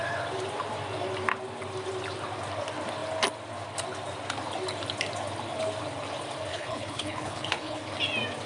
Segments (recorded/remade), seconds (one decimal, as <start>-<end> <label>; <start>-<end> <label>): 0.0-6.5 recorded; 6.5-7.8 remade; 7.8-8.5 recorded

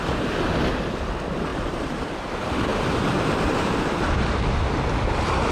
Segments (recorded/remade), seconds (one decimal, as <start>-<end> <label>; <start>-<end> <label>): 0.0-1.5 recorded; 1.5-2.3 remade; 2.3-2.7 recorded; 2.7-4.4 remade; 4.4-5.5 recorded

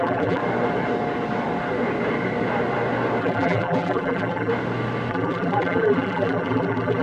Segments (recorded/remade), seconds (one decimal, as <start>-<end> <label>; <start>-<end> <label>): 0.0-0.4 remade; 0.4-3.2 recorded; 3.2-4.5 remade; 4.5-5.1 recorded; 5.1-7.0 remade

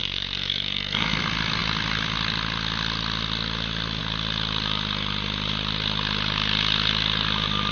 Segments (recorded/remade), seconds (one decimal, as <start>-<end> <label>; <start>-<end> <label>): 0.0-1.2 remade; 1.2-7.7 recorded

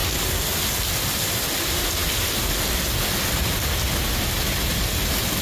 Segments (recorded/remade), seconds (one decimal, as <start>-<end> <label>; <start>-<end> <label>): 0.0-5.4 recorded